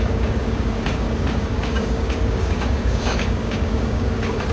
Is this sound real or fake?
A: fake